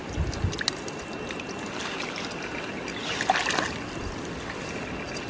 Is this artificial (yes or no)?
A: no